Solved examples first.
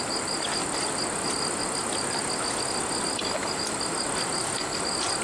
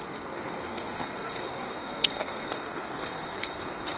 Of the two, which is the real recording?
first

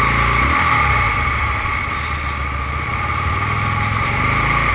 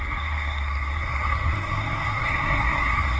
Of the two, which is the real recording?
first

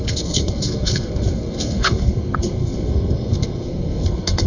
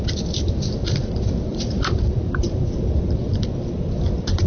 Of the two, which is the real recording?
second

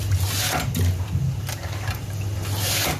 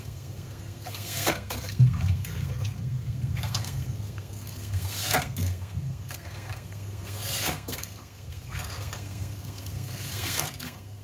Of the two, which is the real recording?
first